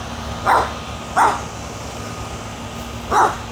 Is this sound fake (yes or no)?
no